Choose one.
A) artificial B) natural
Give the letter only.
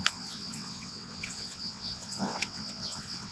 A